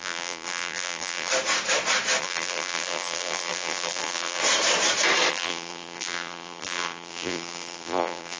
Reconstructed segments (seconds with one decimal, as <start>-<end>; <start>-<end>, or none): 0.0-1.3; 2.2-4.4; 5.3-8.4